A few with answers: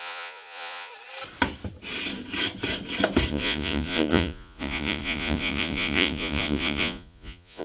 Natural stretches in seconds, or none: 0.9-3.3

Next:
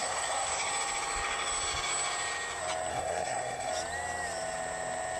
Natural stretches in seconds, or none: 0.7-2.9; 3.7-5.2

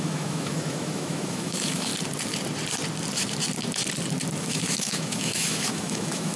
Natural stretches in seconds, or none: 1.9-4.4

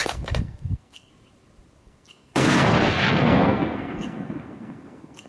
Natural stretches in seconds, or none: 1.1-1.8

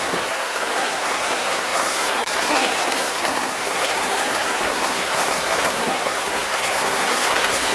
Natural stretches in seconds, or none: none

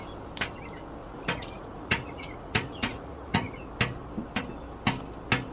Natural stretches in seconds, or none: 0.0-1.0; 3.7-5.5

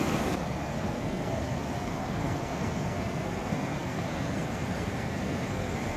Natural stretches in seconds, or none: none